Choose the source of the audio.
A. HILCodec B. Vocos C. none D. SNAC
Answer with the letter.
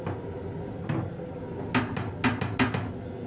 C